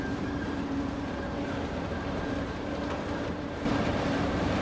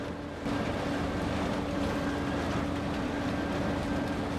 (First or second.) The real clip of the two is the second